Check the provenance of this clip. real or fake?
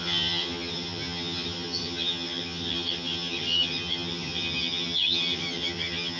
fake